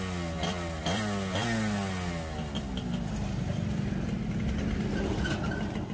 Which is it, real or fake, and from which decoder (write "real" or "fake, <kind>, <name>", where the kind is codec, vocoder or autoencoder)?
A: real